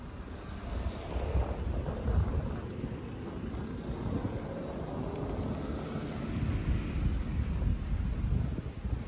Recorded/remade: recorded